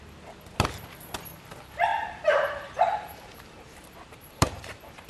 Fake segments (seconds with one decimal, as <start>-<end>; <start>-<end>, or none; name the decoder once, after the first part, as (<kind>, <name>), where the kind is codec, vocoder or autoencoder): 1.9-5.1 (vocoder, BigVGAN v2)